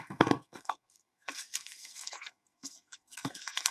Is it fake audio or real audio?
fake